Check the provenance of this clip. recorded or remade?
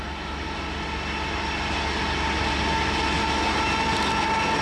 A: recorded